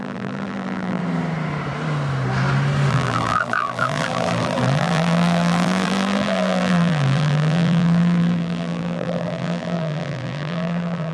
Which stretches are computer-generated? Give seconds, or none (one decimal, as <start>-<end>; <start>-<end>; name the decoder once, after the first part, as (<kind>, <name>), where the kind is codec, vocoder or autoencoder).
0.0-1.0 (vocoder, BigVGAN v2); 2.9-11.1